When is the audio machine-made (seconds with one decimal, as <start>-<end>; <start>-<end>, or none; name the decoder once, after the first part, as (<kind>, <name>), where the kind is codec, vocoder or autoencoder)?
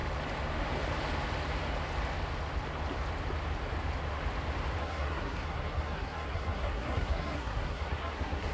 4.8-8.5 (codec, SNAC)